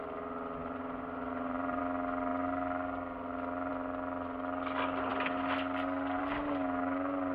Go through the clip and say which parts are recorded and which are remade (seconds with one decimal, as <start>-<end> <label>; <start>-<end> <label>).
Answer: 0.0-0.6 recorded; 0.6-1.8 remade; 1.8-7.3 recorded